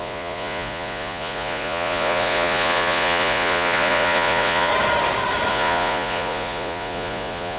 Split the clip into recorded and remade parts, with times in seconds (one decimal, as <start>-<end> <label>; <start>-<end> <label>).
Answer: 0.0-4.7 remade; 4.7-5.5 recorded; 5.5-7.6 remade